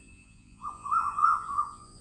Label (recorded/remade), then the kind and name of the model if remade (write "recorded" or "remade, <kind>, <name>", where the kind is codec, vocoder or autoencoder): remade, vocoder, Vocos